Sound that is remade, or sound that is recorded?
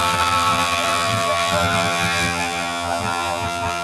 remade